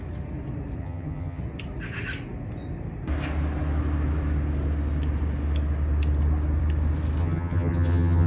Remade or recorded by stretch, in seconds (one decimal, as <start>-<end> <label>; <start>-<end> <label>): 0.0-0.8 recorded; 0.8-1.4 remade; 1.4-7.2 recorded; 7.2-8.3 remade